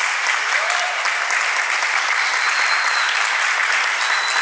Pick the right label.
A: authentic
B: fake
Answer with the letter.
A